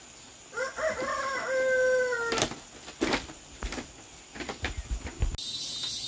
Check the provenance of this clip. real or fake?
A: real